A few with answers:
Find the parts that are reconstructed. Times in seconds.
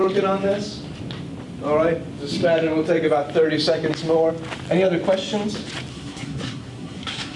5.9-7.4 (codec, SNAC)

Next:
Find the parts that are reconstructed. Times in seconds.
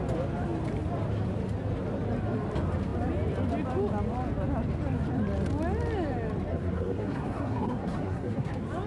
6.5-8.5 (codec, SNAC)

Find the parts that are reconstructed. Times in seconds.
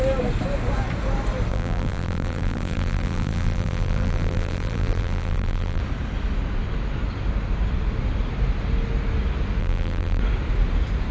1.5-5.8 (vocoder, BigVGAN v2); 9.6-10.2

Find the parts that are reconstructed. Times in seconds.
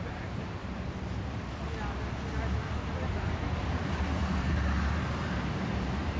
0.0-0.6 (vocoder, BigVGAN v2); 3.6-6.2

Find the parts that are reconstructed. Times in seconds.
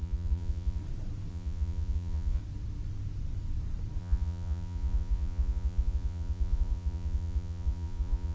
0.0-0.8 (vocoder, Vocos); 1.3-2.4; 4.0-8.3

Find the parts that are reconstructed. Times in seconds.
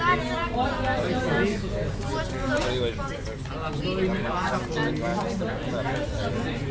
none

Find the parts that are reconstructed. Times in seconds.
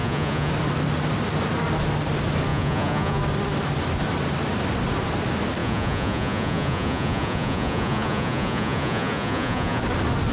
0.0-0.5 (vocoder, Vocos); 2.5-3.2; 5.6-9.8